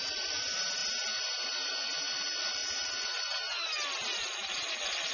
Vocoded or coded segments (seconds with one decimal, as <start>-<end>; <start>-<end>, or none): 0.0-0.8; 1.3-2.6